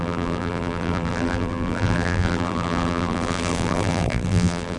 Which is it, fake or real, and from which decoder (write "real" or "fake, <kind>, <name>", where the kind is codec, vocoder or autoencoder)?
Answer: fake, vocoder, BigVGAN v2